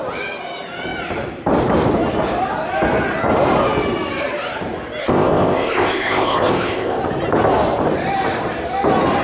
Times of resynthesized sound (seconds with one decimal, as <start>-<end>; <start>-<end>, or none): 5.0-7.0